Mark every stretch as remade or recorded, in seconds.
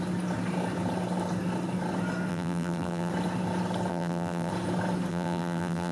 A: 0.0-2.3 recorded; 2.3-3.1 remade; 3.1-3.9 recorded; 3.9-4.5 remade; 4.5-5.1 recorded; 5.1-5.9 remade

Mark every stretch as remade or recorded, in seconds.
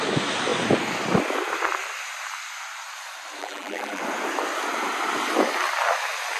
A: 0.0-3.4 recorded; 3.4-4.0 remade; 4.0-6.4 recorded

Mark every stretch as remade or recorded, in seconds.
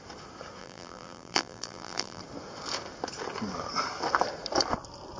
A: 0.0-0.6 recorded; 0.6-2.2 remade; 2.2-5.2 recorded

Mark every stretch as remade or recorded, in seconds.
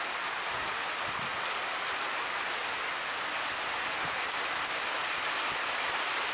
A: 0.0-5.0 recorded; 5.0-6.3 remade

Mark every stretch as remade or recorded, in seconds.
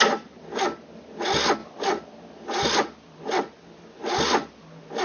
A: 0.0-1.6 recorded; 1.6-3.2 remade; 3.2-4.0 recorded; 4.0-4.6 remade; 4.6-5.0 recorded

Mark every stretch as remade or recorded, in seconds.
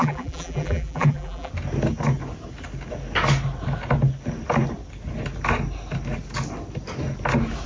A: 0.0-1.5 remade; 1.5-7.7 recorded